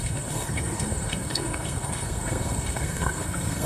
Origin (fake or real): fake